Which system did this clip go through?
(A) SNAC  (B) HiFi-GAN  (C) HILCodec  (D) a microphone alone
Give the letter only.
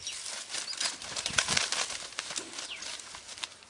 D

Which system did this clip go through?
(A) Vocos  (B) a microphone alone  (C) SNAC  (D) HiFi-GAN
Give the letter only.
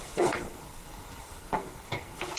C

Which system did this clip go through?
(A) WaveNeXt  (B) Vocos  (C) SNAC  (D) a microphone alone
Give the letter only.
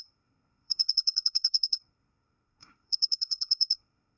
C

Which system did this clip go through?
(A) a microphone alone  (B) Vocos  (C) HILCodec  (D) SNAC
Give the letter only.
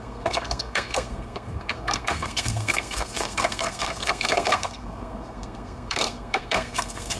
D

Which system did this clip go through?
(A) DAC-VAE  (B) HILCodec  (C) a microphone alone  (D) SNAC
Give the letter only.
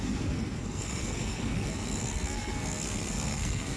D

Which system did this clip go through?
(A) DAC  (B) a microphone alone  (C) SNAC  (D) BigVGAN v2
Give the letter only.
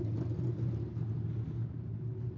B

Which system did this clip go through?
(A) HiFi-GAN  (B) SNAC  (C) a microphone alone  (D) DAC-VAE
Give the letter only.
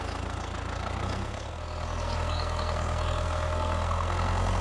B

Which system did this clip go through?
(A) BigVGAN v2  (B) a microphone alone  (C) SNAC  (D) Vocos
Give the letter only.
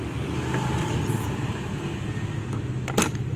B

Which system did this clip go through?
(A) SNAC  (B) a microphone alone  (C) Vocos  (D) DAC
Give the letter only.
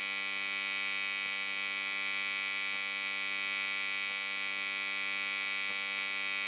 B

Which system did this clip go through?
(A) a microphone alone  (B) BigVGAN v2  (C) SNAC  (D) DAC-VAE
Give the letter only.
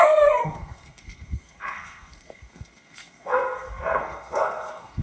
C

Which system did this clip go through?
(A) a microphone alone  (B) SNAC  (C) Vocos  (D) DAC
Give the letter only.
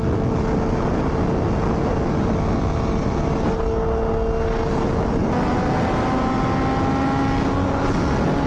A